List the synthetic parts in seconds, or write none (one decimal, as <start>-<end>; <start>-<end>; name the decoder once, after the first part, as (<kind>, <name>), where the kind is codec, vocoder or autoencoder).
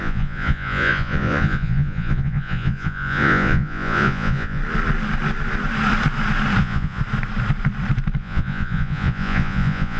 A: 0.0-4.6 (vocoder, Vocos); 6.6-7.0; 8.2-10.0